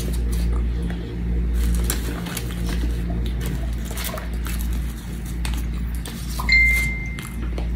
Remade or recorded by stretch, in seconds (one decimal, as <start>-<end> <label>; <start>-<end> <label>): 0.0-7.8 recorded